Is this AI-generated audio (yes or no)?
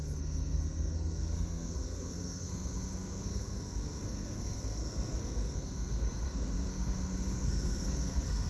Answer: yes